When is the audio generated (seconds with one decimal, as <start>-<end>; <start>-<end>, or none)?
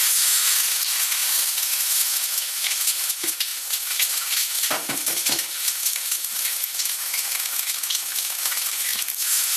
0.0-9.6